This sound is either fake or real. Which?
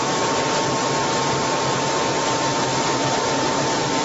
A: fake